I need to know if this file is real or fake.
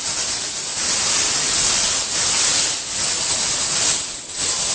real